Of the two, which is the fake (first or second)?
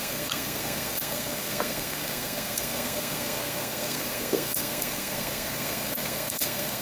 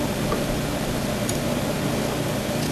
first